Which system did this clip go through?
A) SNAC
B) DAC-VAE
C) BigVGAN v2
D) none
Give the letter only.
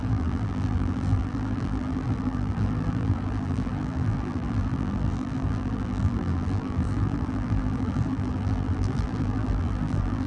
C